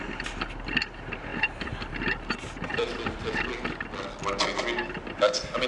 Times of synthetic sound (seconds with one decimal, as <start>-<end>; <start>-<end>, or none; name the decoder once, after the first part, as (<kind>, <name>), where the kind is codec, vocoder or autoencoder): none